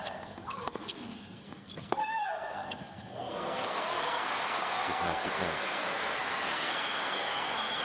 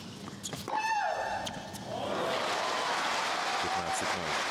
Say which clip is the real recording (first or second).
second